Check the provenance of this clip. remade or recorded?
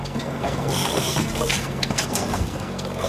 remade